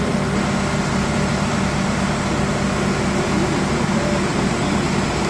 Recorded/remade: recorded